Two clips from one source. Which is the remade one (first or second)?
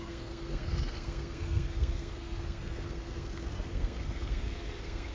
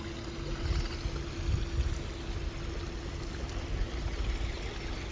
first